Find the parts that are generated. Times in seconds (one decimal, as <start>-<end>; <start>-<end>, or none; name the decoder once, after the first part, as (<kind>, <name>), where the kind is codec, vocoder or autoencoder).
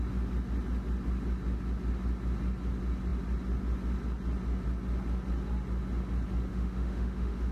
6.5-7.5 (autoencoder, DAC-VAE)